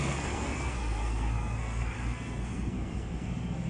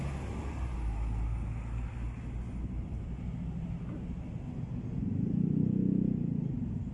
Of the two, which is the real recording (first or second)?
second